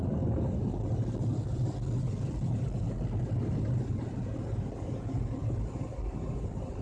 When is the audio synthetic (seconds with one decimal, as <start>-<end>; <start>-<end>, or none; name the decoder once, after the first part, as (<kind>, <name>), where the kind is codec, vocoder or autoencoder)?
none